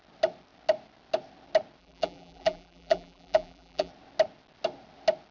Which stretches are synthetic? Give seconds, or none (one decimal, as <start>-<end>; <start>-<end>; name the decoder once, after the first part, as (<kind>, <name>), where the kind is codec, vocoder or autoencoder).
1.8-3.9 (vocoder, BigVGAN v2)